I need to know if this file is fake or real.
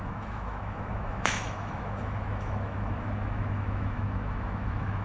fake